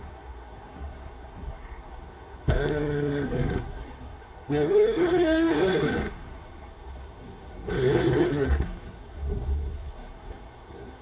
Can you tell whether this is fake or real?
fake